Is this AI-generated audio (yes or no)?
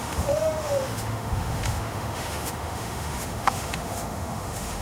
yes